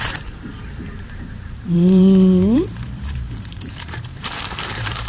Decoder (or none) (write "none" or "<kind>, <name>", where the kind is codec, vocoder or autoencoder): vocoder, BigVGAN v2